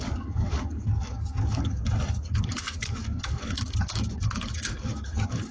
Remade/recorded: remade